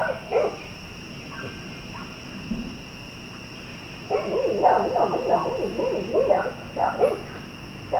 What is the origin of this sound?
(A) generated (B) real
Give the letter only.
B